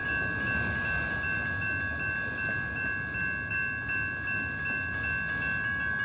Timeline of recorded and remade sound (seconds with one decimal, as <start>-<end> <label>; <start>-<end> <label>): 0.0-6.0 recorded